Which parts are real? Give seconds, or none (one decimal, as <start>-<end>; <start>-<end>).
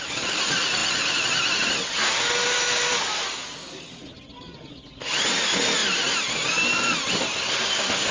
0.0-3.4; 3.9-8.1